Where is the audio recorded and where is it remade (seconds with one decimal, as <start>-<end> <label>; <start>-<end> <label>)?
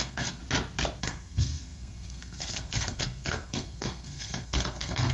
0.0-0.4 remade; 0.4-1.0 recorded; 1.0-5.1 remade